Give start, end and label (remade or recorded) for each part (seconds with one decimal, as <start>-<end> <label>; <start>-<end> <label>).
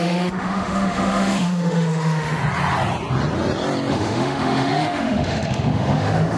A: 0.0-2.4 remade; 2.4-3.9 recorded; 3.9-6.4 remade